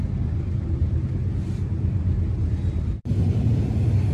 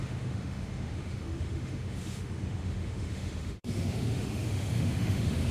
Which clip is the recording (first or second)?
first